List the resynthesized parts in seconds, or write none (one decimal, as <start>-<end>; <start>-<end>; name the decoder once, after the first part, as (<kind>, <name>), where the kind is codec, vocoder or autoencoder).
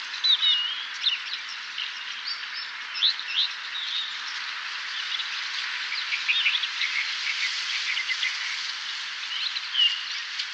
none